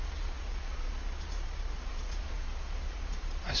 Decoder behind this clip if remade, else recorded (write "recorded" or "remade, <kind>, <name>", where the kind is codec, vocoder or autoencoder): remade, vocoder, Vocos